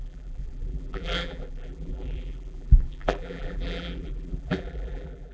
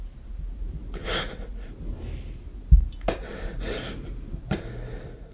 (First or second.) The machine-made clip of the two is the first